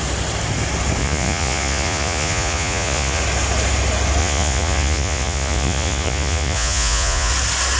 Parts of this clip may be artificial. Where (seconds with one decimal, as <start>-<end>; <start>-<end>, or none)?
1.0-3.2; 4.2-7.3